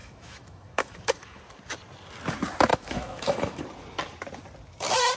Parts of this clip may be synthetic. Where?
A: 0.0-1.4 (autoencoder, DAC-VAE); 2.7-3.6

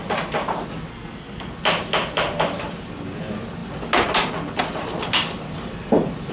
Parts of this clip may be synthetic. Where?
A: 0.9-1.5 (codec, SNAC)

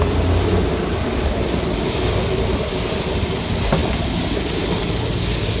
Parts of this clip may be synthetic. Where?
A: none

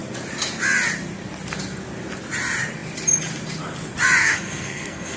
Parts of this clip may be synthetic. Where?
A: 4.2-5.2 (codec, SNAC)

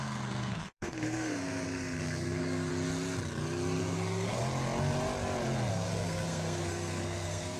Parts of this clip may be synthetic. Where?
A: 0.0-2.7 (codec, SNAC); 3.8-4.4; 5.7-7.6

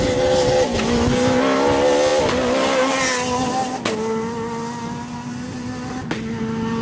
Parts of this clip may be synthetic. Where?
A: none